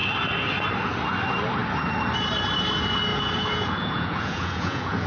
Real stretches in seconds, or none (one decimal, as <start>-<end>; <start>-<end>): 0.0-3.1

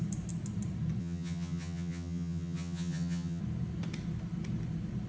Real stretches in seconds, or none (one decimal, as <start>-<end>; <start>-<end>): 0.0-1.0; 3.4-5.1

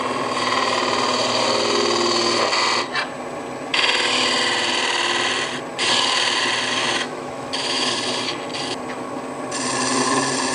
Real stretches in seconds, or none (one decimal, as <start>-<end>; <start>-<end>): 0.0-6.8; 7.8-10.5

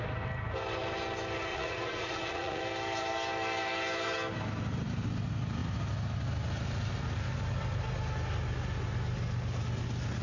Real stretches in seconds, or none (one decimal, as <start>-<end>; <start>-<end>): 0.0-1.5; 2.6-10.2

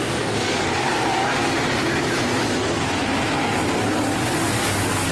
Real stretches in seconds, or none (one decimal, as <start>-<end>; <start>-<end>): 1.4-4.5

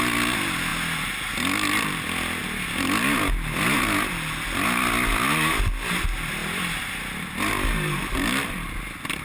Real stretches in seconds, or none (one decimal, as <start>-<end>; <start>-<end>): 0.0-9.2

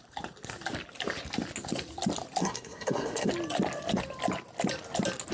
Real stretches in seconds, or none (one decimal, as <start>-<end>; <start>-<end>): 0.0-2.4; 3.3-5.3